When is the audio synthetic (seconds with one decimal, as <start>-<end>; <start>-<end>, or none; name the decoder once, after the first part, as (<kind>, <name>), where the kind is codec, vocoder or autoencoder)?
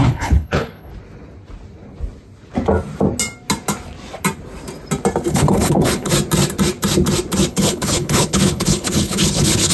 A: 0.0-0.9 (codec, HILCodec); 5.3-6.1; 7.5-9.7